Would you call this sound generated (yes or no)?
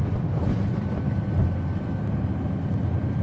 no